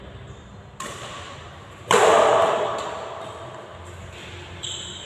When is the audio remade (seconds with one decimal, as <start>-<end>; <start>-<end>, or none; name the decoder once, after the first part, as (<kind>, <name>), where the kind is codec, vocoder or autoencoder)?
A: none